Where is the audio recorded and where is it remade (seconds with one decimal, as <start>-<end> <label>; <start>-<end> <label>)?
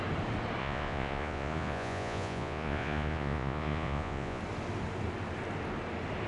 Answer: 0.0-0.6 recorded; 0.6-4.4 remade; 4.4-6.3 recorded